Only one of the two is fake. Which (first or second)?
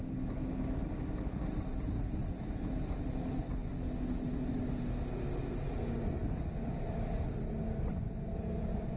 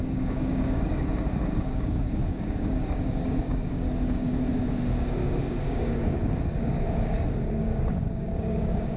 second